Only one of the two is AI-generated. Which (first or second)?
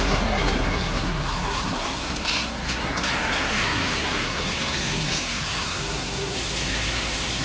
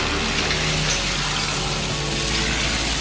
first